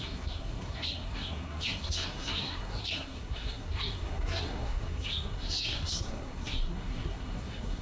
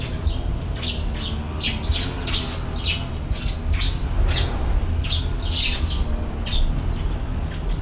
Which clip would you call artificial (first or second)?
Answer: first